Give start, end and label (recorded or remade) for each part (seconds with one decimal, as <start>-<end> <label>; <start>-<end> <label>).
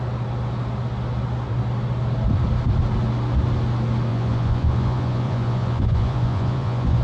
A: 0.0-4.1 recorded; 4.1-7.0 remade